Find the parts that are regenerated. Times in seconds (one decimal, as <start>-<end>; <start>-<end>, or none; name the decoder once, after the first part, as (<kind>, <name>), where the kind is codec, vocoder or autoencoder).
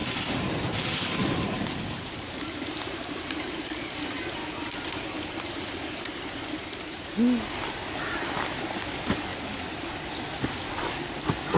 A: 0.0-3.6 (vocoder, BigVGAN v2)